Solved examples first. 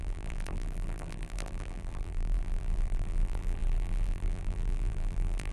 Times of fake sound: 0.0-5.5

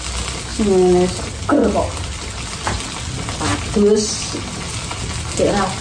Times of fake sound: none

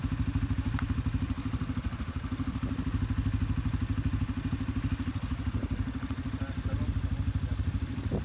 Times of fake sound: none

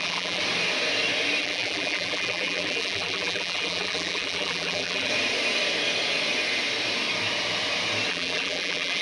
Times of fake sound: 0.0-0.4; 1.4-5.1; 8.1-9.0

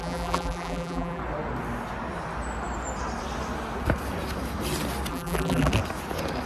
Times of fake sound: 0.0-1.2; 5.1-5.7

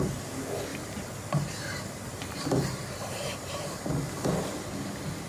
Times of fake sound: 0.7-3.9